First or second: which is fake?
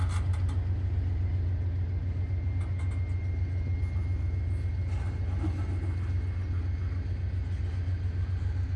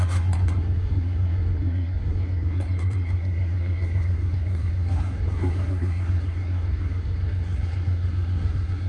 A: second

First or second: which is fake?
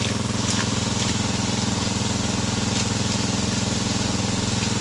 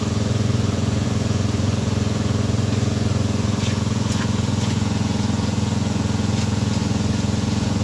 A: second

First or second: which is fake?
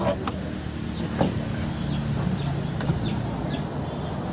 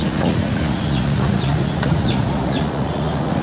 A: second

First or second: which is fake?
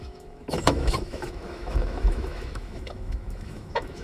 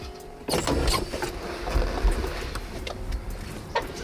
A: first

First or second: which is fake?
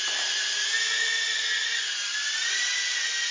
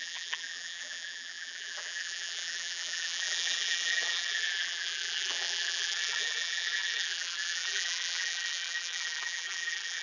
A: second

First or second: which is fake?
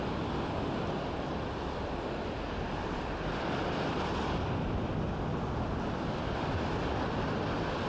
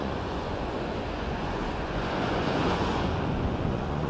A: second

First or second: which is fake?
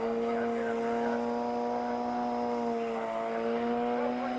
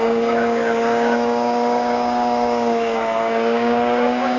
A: second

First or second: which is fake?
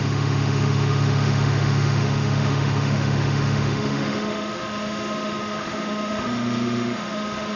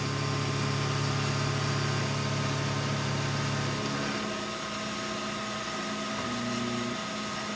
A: first